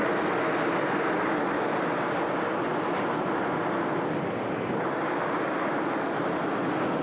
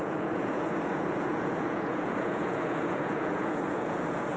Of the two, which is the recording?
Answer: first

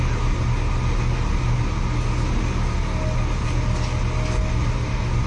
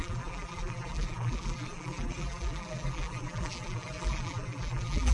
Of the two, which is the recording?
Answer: first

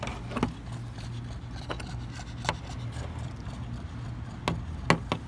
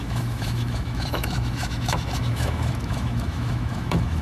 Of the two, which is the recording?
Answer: first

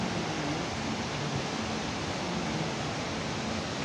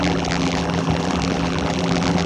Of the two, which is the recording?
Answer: first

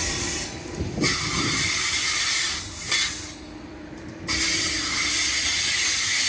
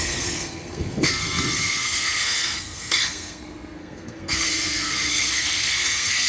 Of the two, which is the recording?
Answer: first